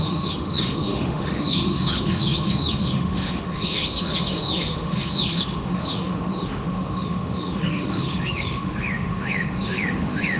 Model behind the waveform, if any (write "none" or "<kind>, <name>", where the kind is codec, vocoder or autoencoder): autoencoder, DAC-VAE